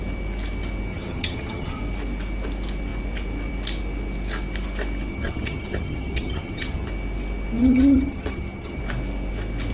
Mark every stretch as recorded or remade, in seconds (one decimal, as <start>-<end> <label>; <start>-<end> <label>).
0.0-0.9 recorded; 0.9-1.8 remade; 1.8-5.1 recorded; 5.1-6.9 remade; 6.9-7.6 recorded; 7.6-8.8 remade; 8.8-9.7 recorded